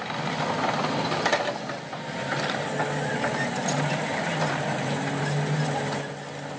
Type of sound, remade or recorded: recorded